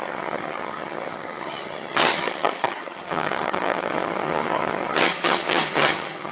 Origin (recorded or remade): remade